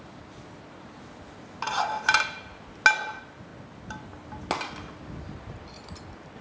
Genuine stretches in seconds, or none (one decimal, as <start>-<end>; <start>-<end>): 0.0-6.4